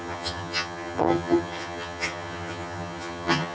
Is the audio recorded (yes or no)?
no